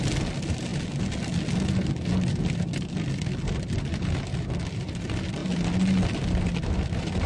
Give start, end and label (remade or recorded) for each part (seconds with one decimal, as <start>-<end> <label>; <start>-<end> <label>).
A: 0.0-7.3 recorded